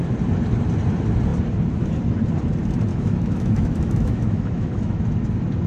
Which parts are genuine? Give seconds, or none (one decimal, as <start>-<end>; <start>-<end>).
0.0-2.9; 5.0-5.7

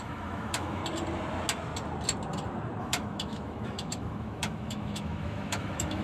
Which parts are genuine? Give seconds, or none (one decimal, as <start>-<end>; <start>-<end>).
0.8-2.8